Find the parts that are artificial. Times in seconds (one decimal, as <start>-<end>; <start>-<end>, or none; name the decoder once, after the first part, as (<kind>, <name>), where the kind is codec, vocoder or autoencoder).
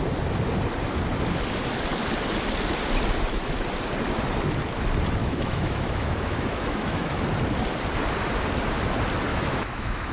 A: 5.2-7.1 (autoencoder, DAC-VAE); 9.3-10.1